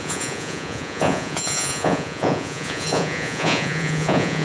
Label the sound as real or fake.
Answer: fake